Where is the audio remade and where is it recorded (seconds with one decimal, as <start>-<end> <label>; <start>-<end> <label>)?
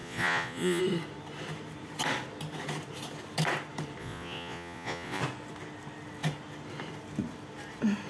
0.0-0.8 remade; 0.8-4.0 recorded; 4.0-5.2 remade; 5.2-8.1 recorded